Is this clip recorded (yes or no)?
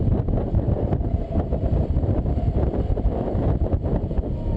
yes